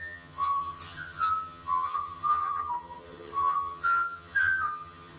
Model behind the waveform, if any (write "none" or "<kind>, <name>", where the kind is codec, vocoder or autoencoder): vocoder, HiFi-GAN